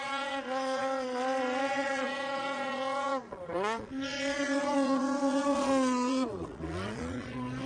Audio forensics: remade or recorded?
remade